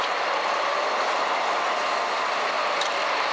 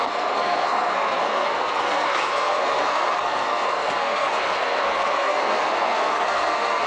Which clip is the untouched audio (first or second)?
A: first